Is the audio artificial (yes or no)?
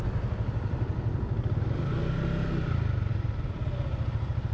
no